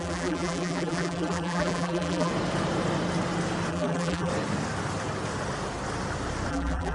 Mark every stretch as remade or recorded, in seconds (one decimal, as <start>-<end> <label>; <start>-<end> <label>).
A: 0.0-2.3 remade; 2.3-3.7 recorded; 3.7-4.3 remade; 4.3-6.5 recorded; 6.5-6.9 remade